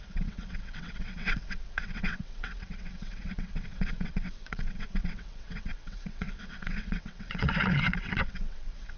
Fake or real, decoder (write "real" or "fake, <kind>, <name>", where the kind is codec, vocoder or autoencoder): fake, vocoder, WaveNeXt